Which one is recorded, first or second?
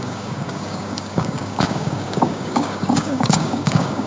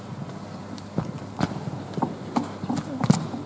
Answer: second